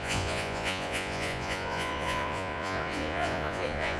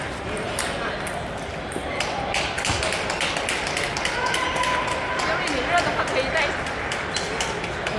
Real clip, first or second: second